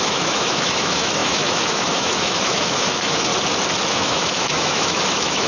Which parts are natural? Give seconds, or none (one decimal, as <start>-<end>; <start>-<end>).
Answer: 3.3-3.9